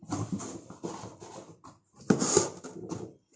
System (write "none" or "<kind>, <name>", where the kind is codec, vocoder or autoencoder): none